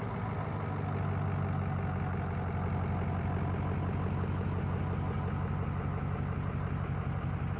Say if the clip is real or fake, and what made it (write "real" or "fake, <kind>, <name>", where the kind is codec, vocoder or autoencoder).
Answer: real